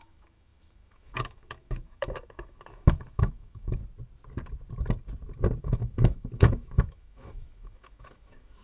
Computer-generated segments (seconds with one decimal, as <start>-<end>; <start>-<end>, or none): 0.0-3.8; 5.6-8.6